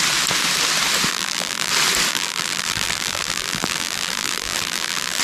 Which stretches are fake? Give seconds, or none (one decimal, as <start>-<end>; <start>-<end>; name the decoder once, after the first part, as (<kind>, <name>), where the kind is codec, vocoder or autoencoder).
1.1-1.7 (vocoder, BigVGAN v2); 2.1-5.2